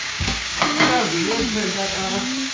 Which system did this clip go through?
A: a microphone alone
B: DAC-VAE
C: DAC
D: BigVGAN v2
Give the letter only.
C